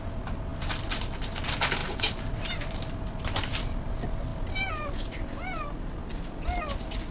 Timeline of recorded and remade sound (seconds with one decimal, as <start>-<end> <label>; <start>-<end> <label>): 0.0-7.1 recorded